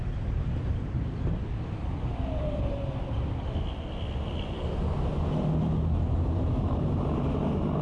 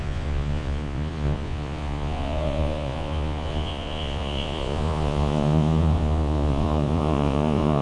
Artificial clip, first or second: second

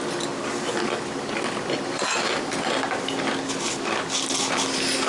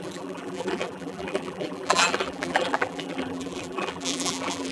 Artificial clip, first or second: second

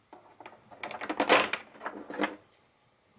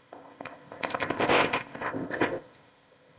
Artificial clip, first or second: second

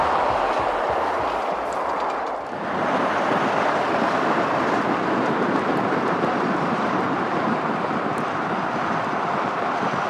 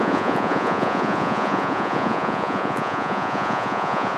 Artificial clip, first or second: second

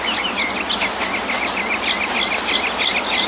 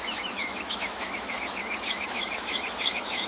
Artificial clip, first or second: second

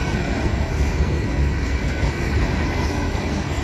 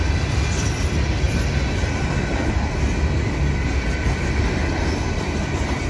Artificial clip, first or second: first